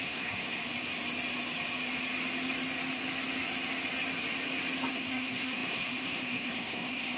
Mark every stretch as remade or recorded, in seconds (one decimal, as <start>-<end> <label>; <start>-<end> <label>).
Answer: 0.0-0.6 remade; 0.6-4.9 recorded; 4.9-7.2 remade